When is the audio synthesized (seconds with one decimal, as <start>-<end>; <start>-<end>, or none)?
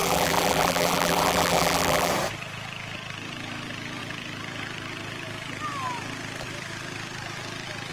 0.0-2.1